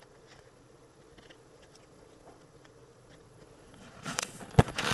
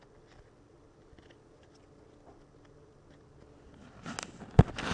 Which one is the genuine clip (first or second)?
second